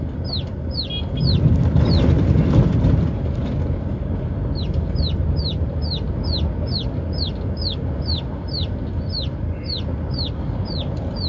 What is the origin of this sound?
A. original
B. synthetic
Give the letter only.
A